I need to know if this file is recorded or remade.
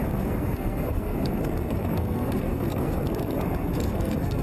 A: remade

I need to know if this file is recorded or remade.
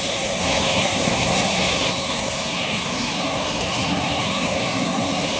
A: remade